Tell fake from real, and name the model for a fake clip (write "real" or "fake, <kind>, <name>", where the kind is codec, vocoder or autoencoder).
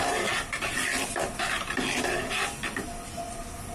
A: real